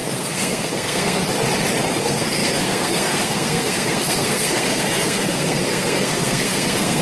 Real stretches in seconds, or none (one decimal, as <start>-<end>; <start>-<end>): 1.2-2.0

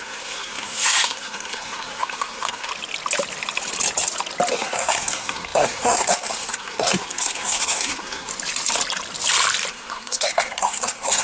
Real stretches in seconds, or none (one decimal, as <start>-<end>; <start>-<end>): 2.7-4.5; 8.3-9.7

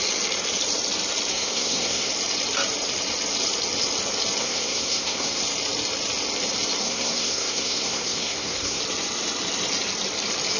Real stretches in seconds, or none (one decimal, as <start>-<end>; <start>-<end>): 0.0-1.3; 2.1-4.4; 5.4-6.8; 8.8-10.6

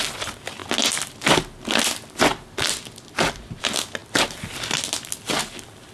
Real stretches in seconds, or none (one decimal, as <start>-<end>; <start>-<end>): 0.0-5.9

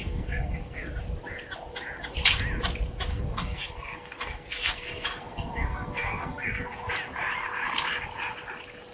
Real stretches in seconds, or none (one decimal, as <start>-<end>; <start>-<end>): 0.9-3.1; 6.9-8.9

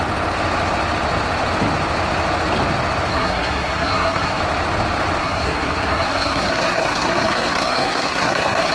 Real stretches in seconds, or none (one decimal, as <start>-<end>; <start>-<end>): 0.0-3.1; 4.4-5.2

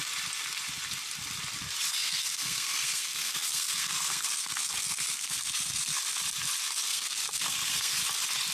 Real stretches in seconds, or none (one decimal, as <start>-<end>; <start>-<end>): 0.0-1.9; 6.0-6.9; 8.0-8.5